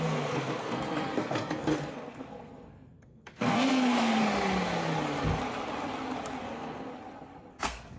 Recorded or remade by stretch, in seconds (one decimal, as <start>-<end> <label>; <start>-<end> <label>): 0.0-4.2 remade; 4.2-6.4 recorded; 6.4-6.9 remade; 6.9-7.5 recorded; 7.5-8.0 remade